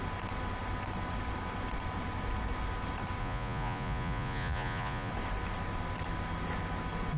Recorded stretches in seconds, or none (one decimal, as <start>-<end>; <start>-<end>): 0.0-3.2; 5.1-7.2